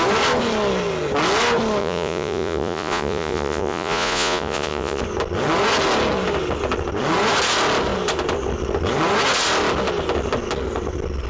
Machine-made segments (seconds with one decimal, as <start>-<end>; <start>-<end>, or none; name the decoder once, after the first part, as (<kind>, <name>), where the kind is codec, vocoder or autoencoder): 1.8-5.0 (vocoder, Vocos)